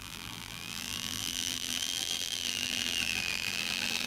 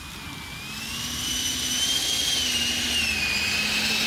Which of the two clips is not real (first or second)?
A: first